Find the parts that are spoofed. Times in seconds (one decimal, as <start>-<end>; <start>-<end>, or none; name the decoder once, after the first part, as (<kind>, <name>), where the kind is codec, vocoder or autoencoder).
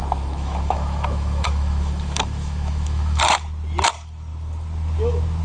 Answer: 0.0-3.2 (autoencoder, DAC-VAE)